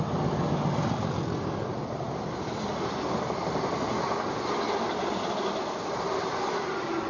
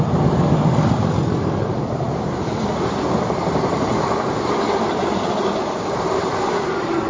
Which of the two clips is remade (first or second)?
second